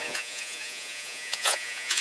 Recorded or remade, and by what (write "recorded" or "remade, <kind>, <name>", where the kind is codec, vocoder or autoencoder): remade, vocoder, Vocos